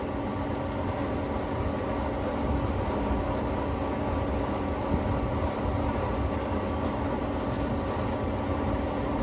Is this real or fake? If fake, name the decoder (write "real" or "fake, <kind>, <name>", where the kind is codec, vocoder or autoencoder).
real